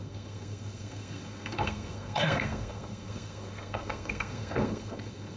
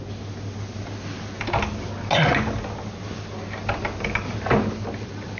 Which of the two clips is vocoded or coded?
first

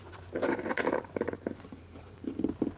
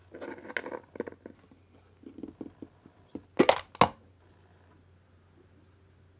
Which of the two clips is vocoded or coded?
first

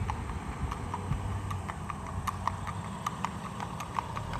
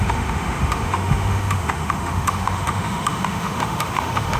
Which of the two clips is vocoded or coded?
second